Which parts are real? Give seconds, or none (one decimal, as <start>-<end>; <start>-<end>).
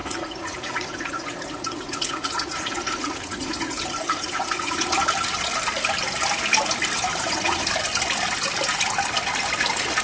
5.0-7.1; 7.7-10.0